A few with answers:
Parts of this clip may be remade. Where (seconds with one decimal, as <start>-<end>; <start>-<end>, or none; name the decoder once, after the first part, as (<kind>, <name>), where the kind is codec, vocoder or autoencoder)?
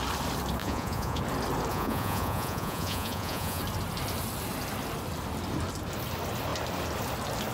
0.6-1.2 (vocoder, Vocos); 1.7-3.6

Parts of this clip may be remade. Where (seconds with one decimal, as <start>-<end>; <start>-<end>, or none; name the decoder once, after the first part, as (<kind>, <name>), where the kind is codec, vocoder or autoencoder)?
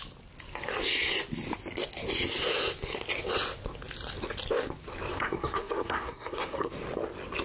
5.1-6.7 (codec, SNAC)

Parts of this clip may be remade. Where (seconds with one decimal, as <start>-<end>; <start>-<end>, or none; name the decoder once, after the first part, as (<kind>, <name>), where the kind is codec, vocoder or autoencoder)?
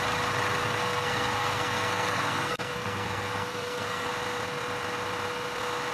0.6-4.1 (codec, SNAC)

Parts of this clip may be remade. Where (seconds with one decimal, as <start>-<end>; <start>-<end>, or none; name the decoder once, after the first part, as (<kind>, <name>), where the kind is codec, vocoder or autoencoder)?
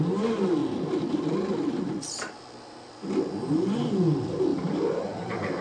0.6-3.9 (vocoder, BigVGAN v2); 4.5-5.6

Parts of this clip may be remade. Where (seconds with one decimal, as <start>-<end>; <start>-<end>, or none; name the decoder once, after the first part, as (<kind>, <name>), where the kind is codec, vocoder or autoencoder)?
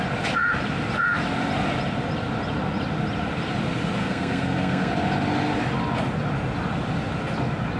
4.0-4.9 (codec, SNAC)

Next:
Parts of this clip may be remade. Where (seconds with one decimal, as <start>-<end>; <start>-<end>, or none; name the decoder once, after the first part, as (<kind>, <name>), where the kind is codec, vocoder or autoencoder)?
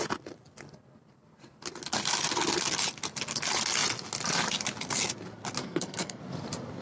5.6-6.2 (codec, SNAC)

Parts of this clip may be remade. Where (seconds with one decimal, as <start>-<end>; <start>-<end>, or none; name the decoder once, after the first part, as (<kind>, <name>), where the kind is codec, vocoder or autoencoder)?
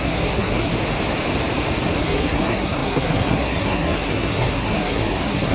0.0-0.7 (codec, SNAC); 2.0-5.5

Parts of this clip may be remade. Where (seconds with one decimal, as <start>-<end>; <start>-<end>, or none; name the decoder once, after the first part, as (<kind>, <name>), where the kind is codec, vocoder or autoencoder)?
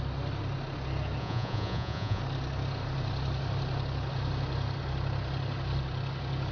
1.2-2.2 (vocoder, Vocos)